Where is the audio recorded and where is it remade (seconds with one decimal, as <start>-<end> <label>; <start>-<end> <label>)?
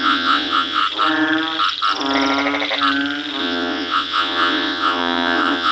0.0-0.8 remade; 0.8-3.4 recorded; 3.4-5.7 remade